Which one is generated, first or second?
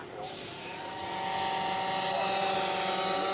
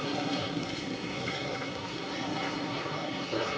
second